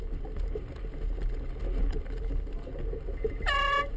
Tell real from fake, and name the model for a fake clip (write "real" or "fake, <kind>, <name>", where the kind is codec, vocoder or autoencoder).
real